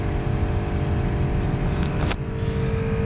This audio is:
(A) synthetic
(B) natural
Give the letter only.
B